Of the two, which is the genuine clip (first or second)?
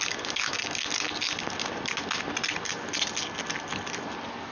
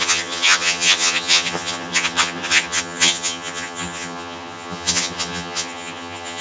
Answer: first